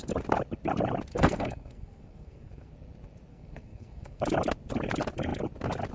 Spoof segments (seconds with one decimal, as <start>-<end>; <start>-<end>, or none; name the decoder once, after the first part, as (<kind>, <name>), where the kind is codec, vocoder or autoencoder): 1.1-2.7 (codec, SNAC); 3.3-4.2